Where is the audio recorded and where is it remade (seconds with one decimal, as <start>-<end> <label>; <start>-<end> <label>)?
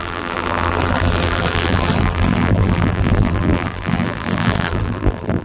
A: 0.0-5.4 remade